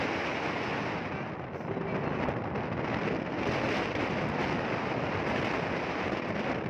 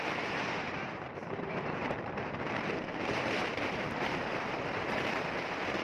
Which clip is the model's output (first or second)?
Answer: second